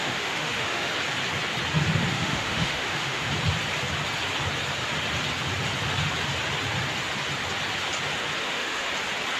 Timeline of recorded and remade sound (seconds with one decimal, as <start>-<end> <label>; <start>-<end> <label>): 0.0-0.9 remade; 0.9-2.1 recorded; 2.1-3.3 remade; 3.3-8.4 recorded; 8.4-8.9 remade; 8.9-9.4 recorded